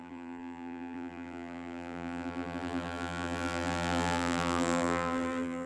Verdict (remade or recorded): remade